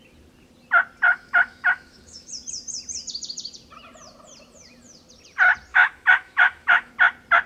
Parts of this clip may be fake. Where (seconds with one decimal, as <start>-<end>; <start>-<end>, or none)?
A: 1.1-2.3; 5.7-6.9